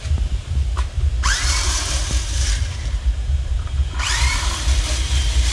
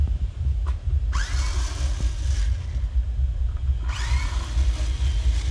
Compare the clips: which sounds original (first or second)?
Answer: second